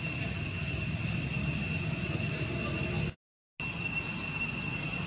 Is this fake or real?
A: real